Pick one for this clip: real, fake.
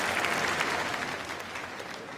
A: real